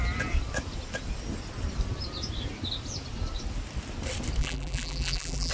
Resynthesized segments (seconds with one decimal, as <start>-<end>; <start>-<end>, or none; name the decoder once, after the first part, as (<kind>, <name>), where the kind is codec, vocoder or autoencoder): 4.4-5.5 (vocoder, BigVGAN v2)